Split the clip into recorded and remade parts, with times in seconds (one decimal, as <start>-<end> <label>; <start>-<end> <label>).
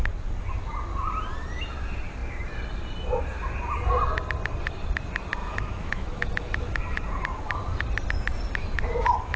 0.0-5.4 recorded; 5.4-6.8 remade; 6.8-9.4 recorded